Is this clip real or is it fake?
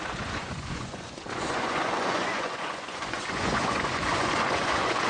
fake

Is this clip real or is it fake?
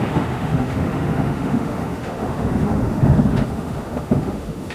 fake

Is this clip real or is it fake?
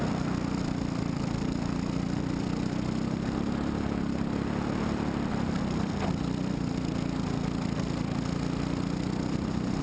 real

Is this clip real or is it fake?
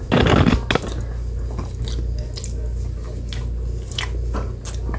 real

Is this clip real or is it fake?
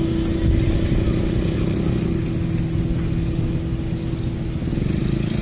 real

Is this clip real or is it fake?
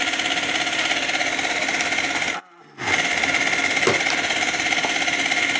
real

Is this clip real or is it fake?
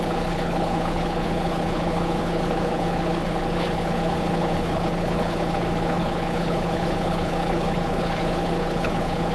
fake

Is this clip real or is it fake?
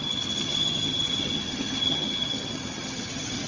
fake